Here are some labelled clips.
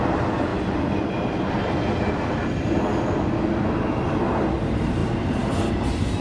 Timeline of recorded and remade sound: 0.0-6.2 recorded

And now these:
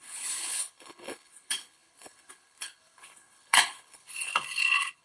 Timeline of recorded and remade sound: 0.0-5.0 remade

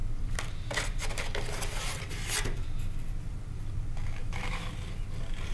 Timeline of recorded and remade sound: 0.0-4.2 recorded; 4.2-4.7 remade; 4.7-5.5 recorded